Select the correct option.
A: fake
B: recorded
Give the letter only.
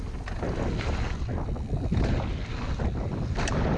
B